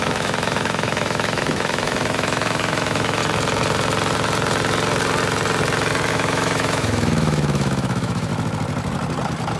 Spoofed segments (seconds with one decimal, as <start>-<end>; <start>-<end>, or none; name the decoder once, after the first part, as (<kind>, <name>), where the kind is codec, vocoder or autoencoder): 0.0-3.2 (autoencoder, DAC-VAE); 6.1-8.3